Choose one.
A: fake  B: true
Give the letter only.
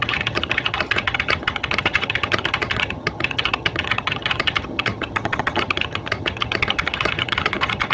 A